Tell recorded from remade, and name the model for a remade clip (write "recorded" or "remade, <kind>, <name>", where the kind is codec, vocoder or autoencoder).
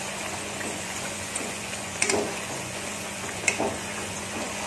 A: remade, vocoder, Vocos